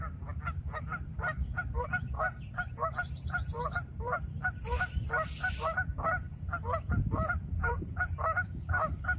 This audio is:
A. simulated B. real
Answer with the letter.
A